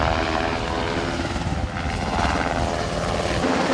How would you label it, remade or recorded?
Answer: recorded